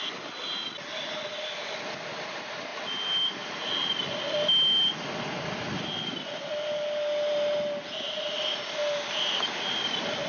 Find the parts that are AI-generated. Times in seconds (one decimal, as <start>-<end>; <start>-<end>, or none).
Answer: none